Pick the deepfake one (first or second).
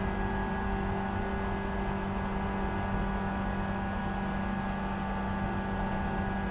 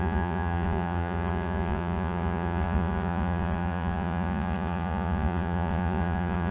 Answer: second